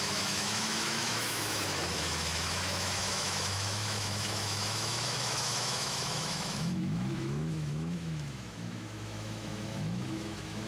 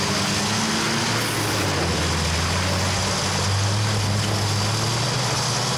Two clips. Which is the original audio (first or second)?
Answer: second